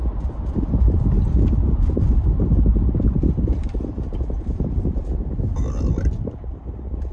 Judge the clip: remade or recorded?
remade